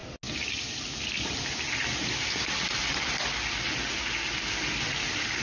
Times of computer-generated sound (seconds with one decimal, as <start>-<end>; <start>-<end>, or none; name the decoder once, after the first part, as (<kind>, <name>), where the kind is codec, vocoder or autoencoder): none